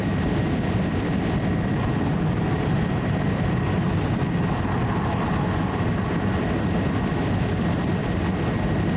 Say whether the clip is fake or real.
real